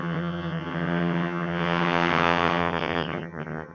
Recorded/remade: remade